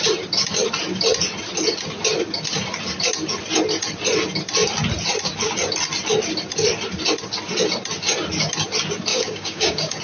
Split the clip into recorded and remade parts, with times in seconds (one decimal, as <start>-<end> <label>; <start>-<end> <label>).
0.0-9.1 recorded; 9.1-10.0 remade